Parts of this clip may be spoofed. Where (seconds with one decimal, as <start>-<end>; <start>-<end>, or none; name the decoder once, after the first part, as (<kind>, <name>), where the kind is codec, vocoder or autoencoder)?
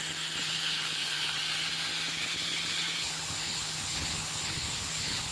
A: 0.4-1.4 (codec, HILCodec); 2.1-5.3